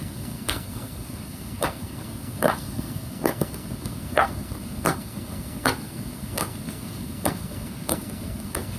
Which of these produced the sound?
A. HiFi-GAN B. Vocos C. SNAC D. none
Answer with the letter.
C